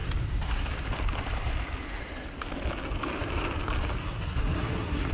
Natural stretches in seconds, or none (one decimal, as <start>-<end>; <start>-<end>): 0.0-4.0